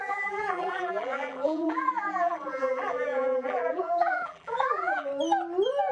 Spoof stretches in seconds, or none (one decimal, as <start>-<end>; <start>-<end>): 0.0-5.1